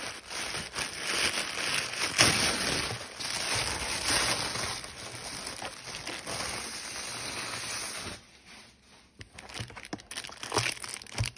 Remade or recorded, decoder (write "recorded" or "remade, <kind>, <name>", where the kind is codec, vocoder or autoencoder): recorded